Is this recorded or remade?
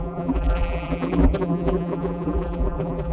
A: remade